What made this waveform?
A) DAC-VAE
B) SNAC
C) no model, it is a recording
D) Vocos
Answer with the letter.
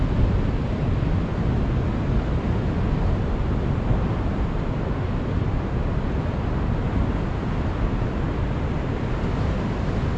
C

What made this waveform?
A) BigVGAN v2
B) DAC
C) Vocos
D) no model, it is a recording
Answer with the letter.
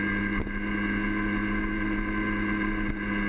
D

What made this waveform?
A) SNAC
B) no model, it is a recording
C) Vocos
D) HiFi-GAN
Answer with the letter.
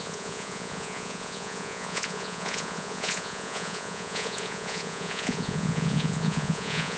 C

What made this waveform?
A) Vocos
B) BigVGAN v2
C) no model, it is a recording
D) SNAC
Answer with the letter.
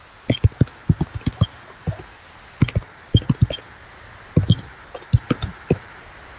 C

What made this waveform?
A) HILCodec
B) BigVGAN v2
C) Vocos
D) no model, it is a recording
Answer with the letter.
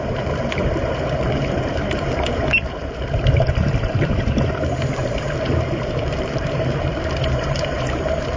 B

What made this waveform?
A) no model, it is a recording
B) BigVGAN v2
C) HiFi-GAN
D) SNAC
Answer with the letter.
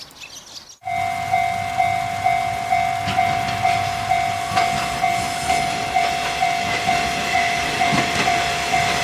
A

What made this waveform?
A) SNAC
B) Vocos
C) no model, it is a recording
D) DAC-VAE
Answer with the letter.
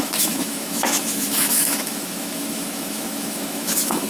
D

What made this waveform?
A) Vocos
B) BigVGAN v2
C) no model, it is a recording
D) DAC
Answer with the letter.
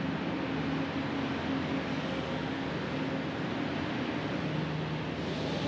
C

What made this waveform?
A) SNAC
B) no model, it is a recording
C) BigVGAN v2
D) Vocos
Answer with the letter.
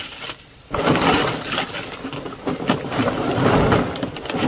B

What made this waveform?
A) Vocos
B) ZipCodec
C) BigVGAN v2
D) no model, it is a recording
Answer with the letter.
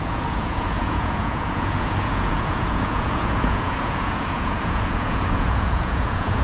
A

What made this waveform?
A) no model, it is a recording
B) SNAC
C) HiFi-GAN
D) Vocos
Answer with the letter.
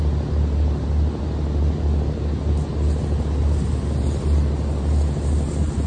A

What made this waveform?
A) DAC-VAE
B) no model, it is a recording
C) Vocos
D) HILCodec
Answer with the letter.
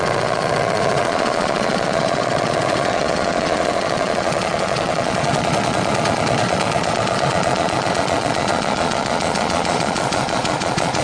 C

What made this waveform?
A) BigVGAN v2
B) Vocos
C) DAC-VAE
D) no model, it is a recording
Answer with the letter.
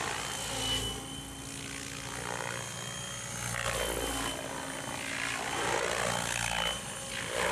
D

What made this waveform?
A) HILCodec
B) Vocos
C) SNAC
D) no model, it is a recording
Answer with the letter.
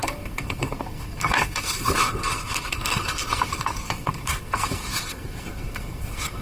C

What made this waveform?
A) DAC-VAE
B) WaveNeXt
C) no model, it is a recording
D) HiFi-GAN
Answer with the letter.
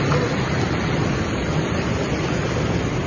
C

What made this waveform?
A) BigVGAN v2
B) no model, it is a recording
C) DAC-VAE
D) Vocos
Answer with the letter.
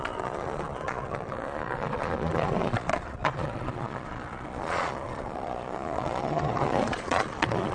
D